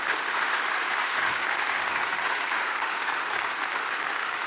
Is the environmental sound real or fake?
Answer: fake